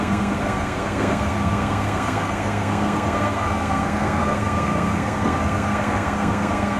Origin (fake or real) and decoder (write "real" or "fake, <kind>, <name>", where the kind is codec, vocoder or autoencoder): fake, codec, SNAC